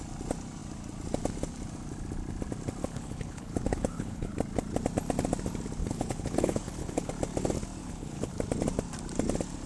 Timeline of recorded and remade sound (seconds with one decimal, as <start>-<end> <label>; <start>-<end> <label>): 0.0-2.8 recorded; 2.8-4.3 remade; 4.3-5.8 recorded; 5.8-7.1 remade; 7.1-7.8 recorded; 7.8-8.3 remade; 8.3-9.7 recorded